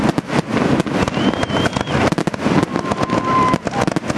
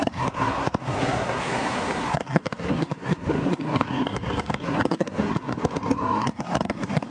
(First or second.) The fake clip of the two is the second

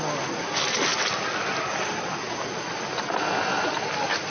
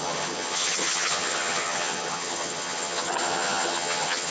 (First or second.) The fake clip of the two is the second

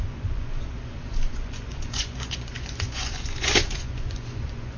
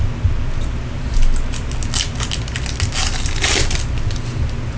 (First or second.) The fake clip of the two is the first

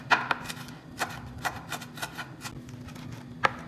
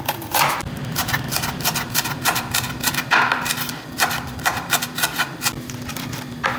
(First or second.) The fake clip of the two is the second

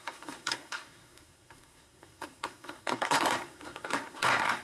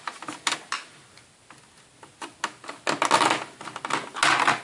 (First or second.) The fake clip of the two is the first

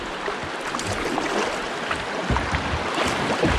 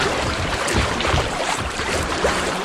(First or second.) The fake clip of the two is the second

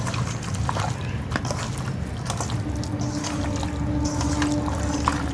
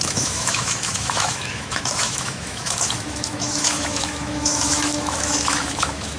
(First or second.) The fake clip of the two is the second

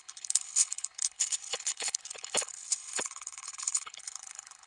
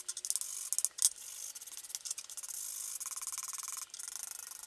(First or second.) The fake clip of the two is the first